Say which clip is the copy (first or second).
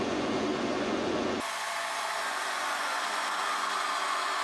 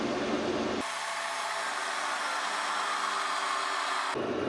first